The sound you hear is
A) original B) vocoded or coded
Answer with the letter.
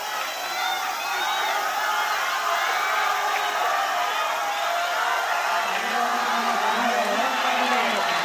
A